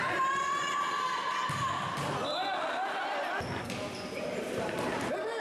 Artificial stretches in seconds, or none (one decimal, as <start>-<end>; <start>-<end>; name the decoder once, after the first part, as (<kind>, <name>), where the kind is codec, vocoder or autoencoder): 0.0-1.2 (vocoder, BigVGAN v2); 4.4-5.4